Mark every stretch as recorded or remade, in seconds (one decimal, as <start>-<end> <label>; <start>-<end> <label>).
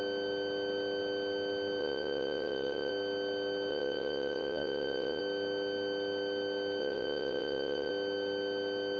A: 0.0-1.8 recorded; 1.8-2.9 remade; 2.9-3.7 recorded; 3.7-5.2 remade; 5.2-6.8 recorded; 6.8-7.9 remade; 7.9-9.0 recorded